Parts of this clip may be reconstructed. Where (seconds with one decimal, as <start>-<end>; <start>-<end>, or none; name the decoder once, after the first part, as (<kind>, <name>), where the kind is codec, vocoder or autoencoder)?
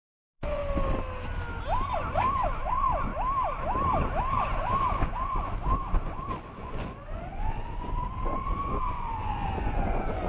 0.0-0.6 (vocoder, Vocos); 1.9-3.1; 4.3-10.3